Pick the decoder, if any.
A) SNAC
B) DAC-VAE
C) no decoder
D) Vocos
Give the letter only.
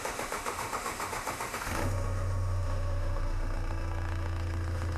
B